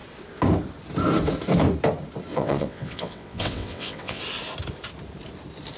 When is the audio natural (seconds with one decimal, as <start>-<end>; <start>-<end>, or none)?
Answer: 0.0-2.3; 4.2-5.8